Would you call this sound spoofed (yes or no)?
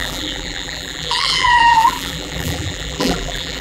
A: yes